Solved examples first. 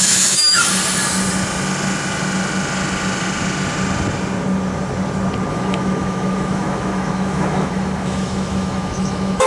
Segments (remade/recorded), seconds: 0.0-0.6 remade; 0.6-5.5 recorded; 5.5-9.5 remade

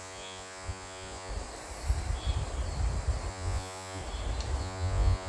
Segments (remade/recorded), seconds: 0.0-1.3 remade; 1.3-3.3 recorded; 3.3-4.0 remade; 4.0-4.6 recorded; 4.6-5.3 remade

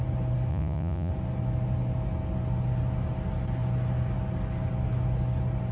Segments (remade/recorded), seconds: 0.0-0.5 recorded; 0.5-1.1 remade; 1.1-5.7 recorded

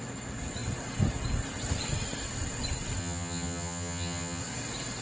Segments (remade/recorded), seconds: 0.0-3.0 recorded; 3.0-4.4 remade; 4.4-5.0 recorded

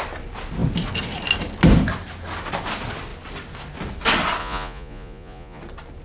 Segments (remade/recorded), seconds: 0.0-4.4 recorded; 4.4-5.6 remade; 5.6-6.0 recorded

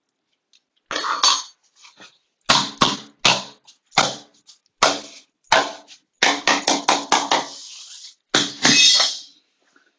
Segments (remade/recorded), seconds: 0.0-10.0 recorded